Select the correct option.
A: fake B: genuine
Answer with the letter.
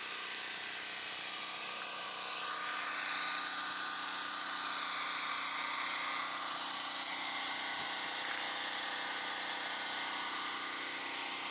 B